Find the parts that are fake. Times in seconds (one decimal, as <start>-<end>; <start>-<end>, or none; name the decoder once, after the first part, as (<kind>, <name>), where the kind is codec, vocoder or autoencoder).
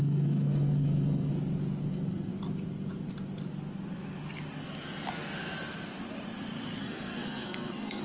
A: 0.0-1.3 (codec, SNAC); 1.9-2.3; 6.8-8.0